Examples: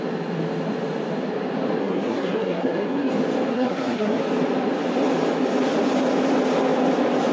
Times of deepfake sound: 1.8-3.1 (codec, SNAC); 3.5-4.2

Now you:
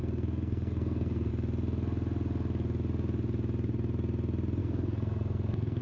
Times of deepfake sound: 0.0-1.3 (codec, SNAC); 4.6-5.8

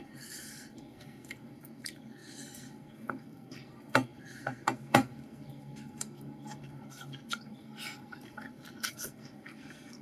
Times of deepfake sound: 0.0-10.0 (codec, SNAC)

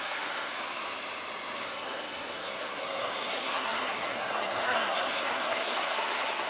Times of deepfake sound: 0.0-0.5 (codec, SNAC); 1.6-6.5

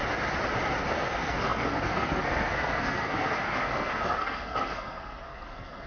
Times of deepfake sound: 0.9-5.9 (codec, SNAC)

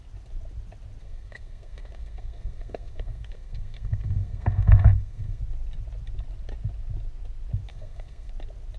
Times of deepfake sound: 1.0-5.4 (codec, SNAC); 7.7-8.3

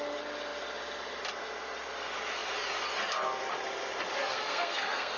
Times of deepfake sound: 4.2-5.2 (codec, SNAC)

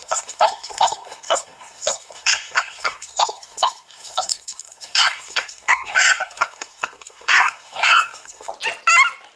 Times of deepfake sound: 0.0-8.5 (codec, SNAC)